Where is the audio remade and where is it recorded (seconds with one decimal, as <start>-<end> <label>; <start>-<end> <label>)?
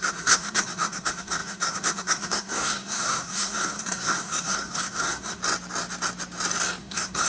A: 0.0-5.4 remade; 5.4-6.8 recorded; 6.8-7.3 remade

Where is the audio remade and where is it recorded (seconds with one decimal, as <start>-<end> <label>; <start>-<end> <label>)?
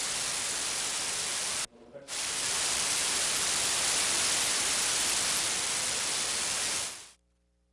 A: 0.0-7.7 recorded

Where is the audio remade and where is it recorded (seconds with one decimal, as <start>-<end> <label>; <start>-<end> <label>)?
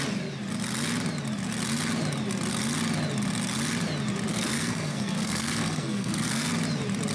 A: 0.0-4.3 recorded; 4.3-6.5 remade; 6.5-7.1 recorded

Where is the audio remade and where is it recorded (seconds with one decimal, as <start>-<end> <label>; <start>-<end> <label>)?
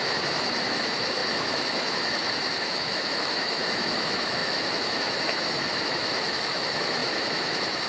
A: 0.0-7.9 remade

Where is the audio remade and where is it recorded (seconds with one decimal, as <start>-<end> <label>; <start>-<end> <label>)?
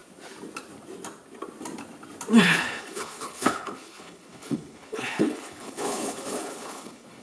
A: 0.0-2.4 recorded; 2.4-7.2 remade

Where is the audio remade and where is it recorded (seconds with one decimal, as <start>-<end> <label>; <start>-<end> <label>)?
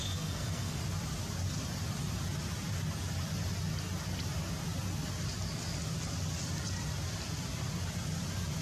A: 0.0-0.8 remade; 0.8-8.6 recorded